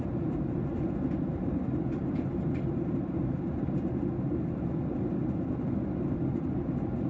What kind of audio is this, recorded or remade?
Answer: recorded